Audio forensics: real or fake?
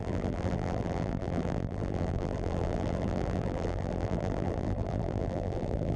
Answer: fake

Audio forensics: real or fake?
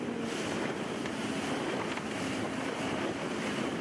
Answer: fake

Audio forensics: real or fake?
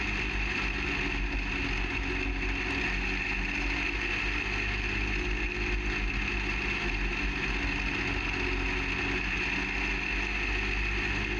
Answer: real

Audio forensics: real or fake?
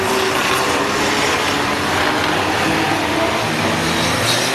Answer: real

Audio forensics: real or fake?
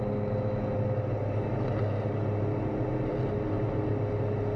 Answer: real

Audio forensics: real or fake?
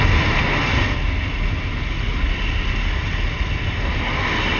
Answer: real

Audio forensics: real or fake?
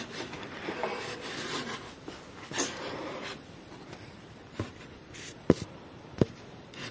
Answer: fake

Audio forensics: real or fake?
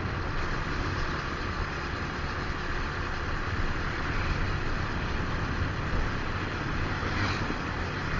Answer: real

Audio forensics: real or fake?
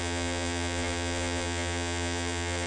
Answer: fake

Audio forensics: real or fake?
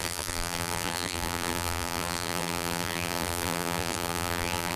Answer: fake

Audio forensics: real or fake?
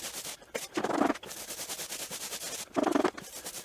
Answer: real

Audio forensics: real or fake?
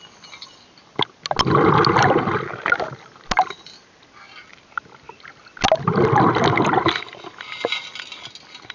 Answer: real